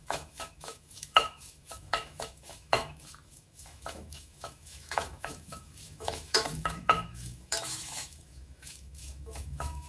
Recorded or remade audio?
remade